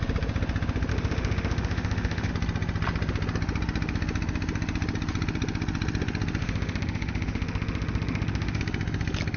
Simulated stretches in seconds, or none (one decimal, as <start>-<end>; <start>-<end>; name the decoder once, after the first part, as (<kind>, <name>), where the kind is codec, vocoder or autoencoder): 0.9-2.3 (autoencoder, DAC-VAE); 6.4-8.6